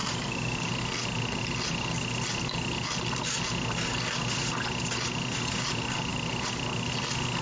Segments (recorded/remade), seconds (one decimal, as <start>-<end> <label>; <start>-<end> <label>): 0.0-7.4 recorded